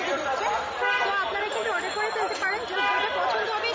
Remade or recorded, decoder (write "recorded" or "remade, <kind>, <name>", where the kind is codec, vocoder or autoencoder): recorded